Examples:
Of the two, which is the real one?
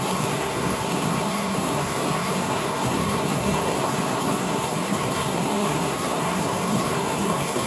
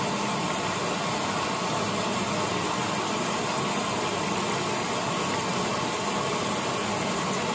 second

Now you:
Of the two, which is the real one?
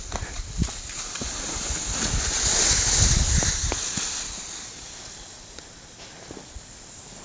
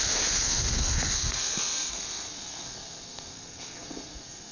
first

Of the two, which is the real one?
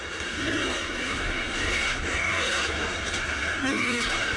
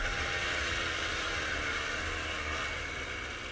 second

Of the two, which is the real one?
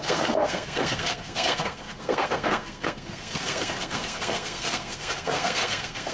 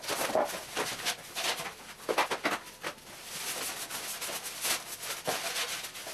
second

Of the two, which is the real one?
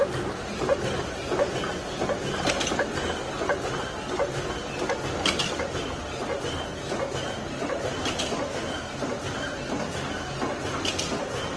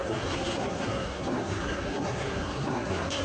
first